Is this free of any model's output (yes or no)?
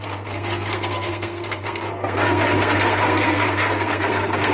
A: no